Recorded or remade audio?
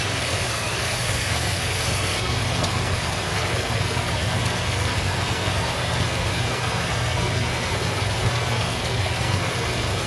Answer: remade